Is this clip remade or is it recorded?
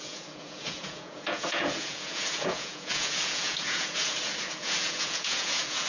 remade